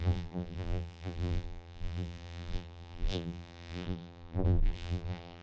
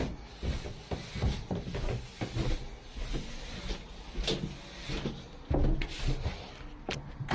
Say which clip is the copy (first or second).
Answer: first